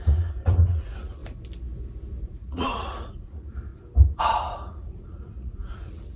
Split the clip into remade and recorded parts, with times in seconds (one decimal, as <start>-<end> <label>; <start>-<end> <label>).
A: 0.0-1.2 remade; 1.2-2.2 recorded; 2.2-3.7 remade; 3.7-4.2 recorded; 4.2-6.2 remade